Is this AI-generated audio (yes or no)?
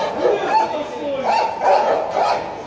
no